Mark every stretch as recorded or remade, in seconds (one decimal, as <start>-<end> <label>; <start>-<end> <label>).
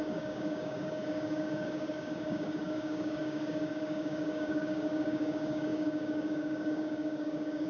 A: 0.0-7.7 remade